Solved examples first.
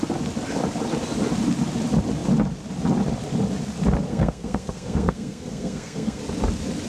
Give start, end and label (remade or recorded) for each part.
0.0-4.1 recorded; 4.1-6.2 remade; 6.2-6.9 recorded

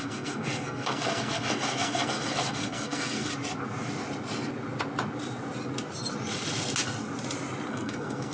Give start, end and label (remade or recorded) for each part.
0.0-3.3 remade; 3.3-7.7 recorded; 7.7-8.3 remade

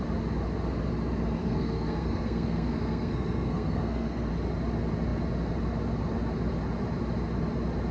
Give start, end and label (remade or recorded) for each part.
0.0-1.4 recorded; 1.4-4.3 remade; 4.3-7.9 recorded

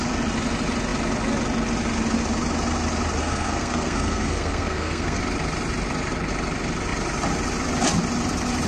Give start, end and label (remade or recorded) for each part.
0.0-3.2 recorded; 3.2-5.2 remade; 5.2-8.7 recorded

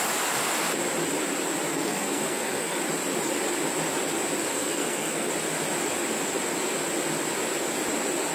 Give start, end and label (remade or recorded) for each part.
0.0-1.7 recorded; 1.7-2.8 remade; 2.8-4.5 recorded; 4.5-5.3 remade; 5.3-8.3 recorded

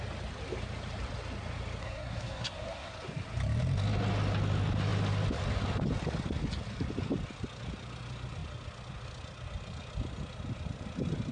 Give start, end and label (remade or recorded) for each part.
0.0-1.8 recorded; 1.8-2.9 remade; 2.9-11.3 recorded

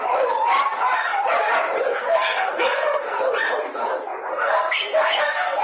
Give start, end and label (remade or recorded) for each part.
0.0-1.9 recorded; 1.9-3.2 remade; 3.2-4.3 recorded; 4.3-5.6 remade

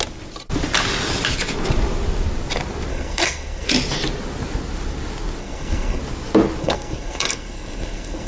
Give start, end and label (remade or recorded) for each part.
0.0-2.9 recorded; 2.9-3.7 remade; 3.7-5.4 recorded; 5.4-6.0 remade; 6.0-6.6 recorded; 6.6-8.3 remade